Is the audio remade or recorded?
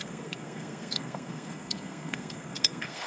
remade